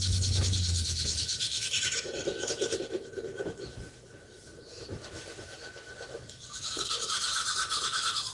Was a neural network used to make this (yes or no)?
yes